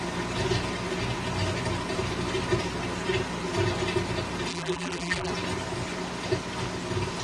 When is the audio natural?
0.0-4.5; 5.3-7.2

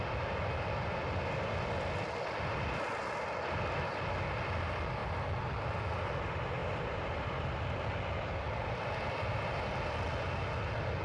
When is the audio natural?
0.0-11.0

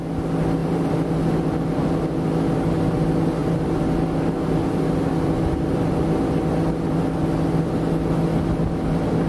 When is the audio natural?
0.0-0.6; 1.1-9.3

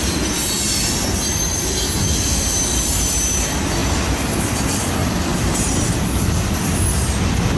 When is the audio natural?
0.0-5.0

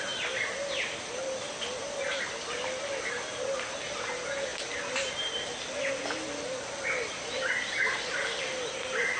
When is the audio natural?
0.0-9.2